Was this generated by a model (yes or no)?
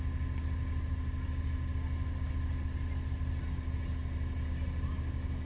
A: no